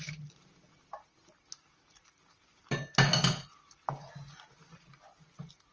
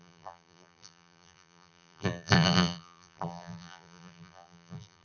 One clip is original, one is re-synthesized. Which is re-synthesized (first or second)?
second